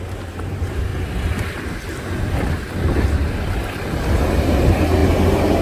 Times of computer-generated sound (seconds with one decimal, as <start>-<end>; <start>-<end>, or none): 0.0-0.9; 4.1-5.0